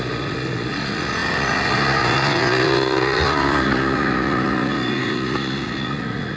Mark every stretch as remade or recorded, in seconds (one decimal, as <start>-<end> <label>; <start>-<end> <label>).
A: 0.0-6.4 remade